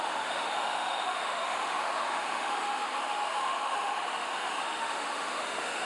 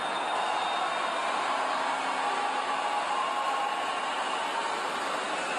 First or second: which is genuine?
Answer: second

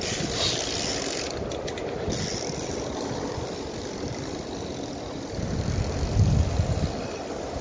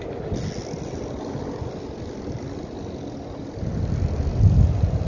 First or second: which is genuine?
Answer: second